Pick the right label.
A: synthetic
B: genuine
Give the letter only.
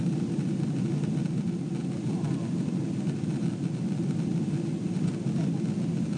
B